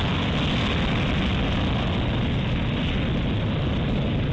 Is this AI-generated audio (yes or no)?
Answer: no